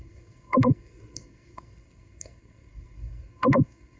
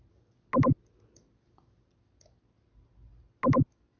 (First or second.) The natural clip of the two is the second